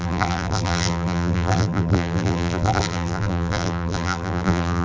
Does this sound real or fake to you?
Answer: fake